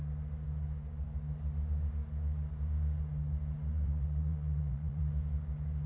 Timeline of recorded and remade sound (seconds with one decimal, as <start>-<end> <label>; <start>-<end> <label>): 0.0-3.7 recorded; 3.7-5.0 remade; 5.0-5.9 recorded